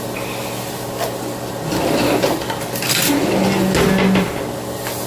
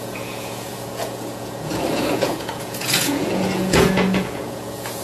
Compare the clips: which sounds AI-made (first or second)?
second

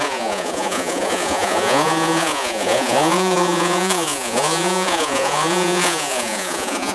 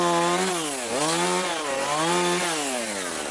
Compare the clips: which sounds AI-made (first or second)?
first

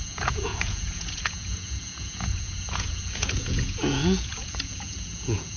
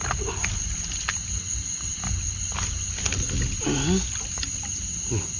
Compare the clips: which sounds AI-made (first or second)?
first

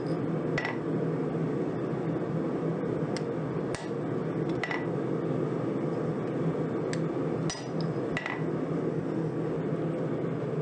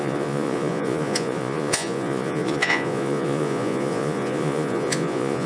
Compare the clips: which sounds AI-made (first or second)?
second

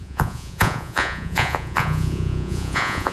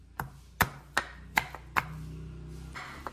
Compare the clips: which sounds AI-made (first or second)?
first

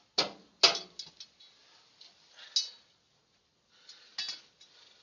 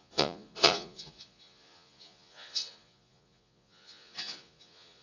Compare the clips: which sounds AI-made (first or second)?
second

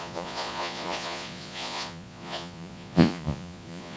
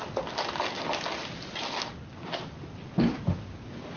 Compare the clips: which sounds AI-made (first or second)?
first